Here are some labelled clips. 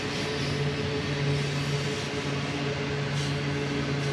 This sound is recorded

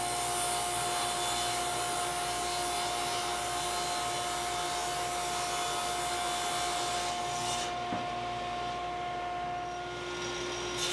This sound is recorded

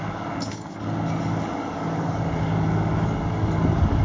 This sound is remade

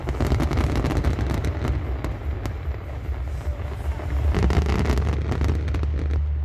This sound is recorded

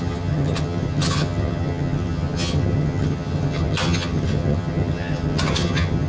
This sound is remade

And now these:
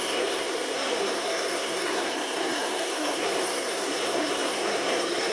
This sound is remade